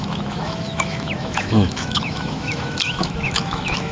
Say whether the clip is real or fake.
fake